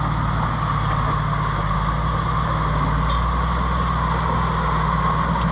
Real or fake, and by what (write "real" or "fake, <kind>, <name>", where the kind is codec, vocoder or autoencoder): real